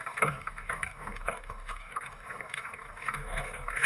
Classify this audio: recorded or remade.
remade